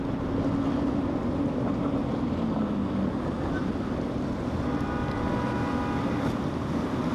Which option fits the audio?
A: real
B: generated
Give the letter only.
A